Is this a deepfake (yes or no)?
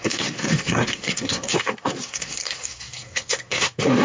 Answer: yes